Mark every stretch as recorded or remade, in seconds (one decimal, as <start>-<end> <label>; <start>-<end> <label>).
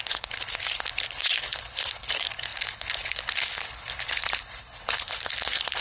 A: 0.0-5.8 remade